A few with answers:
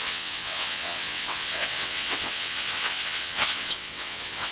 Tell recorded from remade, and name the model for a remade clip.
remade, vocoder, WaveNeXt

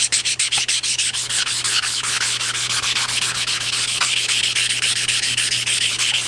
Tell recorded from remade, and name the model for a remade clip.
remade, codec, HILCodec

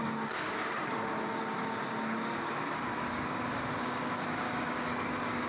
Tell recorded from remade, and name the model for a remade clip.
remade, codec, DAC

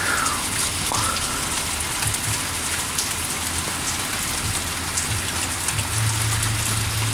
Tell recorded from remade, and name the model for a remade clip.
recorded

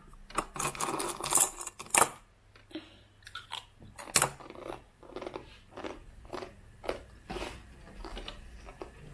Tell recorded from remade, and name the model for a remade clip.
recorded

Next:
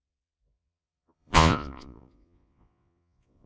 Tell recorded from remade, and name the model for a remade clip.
remade, vocoder, Vocos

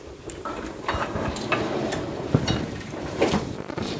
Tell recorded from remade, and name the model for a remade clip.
remade, vocoder, BigVGAN v2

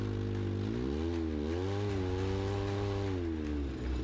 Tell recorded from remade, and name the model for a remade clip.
recorded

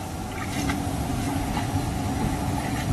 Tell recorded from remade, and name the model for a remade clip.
recorded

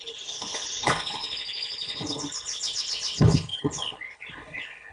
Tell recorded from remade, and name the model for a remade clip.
remade, codec, HILCodec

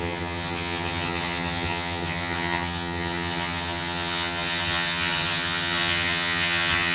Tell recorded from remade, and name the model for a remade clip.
remade, vocoder, HiFi-GAN